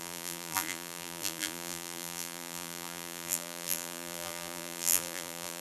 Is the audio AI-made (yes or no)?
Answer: yes